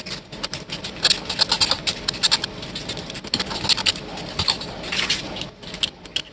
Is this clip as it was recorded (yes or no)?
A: yes